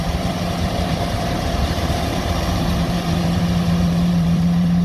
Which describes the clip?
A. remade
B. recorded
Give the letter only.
A